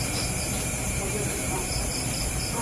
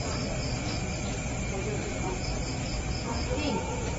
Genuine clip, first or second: second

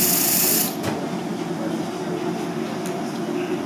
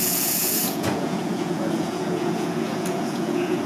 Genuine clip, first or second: first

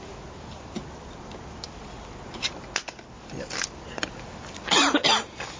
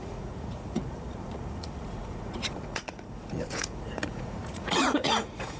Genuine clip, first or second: first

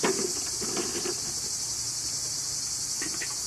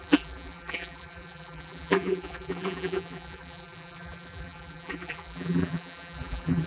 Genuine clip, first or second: first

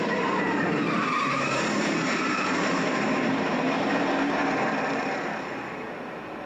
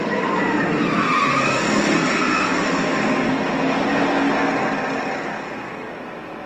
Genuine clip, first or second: second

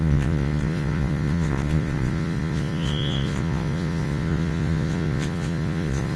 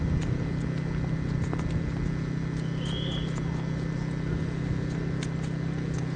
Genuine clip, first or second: second